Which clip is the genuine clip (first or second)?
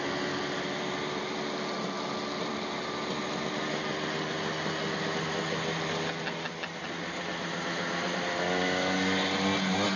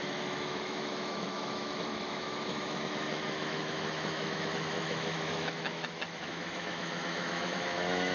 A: first